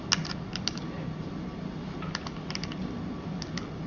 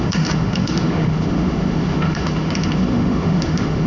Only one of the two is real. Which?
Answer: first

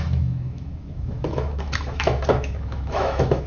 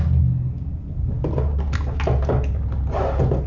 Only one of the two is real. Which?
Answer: second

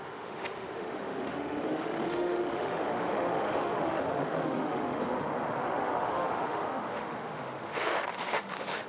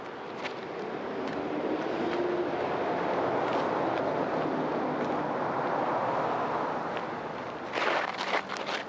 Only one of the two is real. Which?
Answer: second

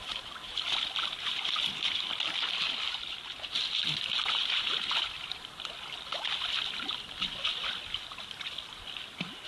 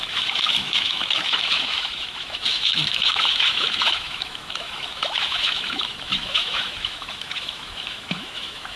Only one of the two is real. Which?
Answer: first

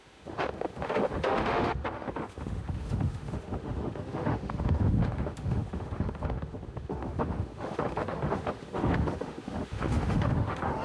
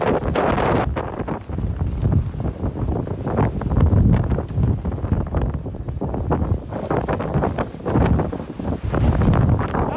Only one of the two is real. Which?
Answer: second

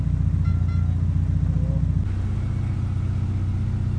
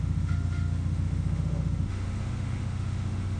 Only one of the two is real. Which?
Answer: first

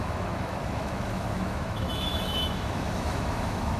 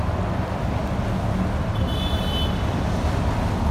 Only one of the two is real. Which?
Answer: second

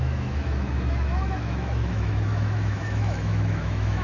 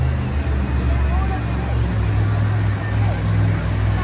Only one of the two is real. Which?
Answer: second